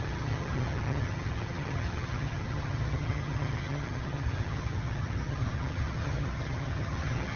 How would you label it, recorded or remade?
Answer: remade